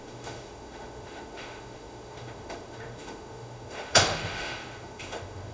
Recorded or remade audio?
remade